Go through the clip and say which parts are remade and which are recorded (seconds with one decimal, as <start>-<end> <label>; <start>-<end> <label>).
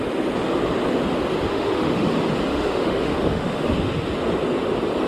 0.0-1.5 recorded; 1.5-2.1 remade; 2.1-2.5 recorded; 2.5-3.7 remade; 3.7-5.1 recorded